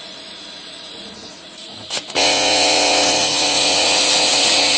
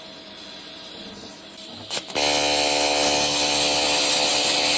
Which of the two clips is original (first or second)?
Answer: second